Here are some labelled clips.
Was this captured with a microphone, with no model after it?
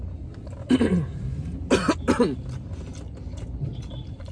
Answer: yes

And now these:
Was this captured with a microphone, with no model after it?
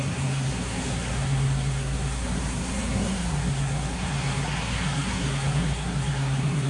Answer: no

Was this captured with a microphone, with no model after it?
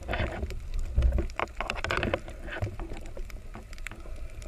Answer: yes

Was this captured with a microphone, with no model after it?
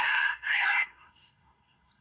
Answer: no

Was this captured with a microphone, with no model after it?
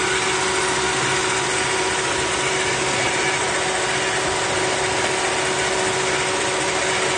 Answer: yes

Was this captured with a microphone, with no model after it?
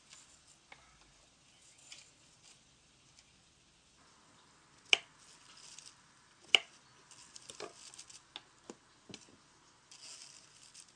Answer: yes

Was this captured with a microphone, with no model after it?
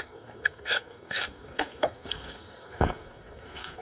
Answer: no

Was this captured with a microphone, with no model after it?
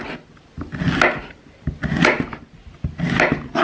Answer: yes